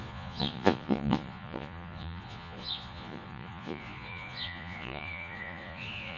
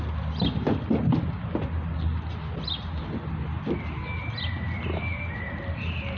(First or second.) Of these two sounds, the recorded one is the second